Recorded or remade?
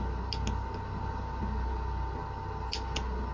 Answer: recorded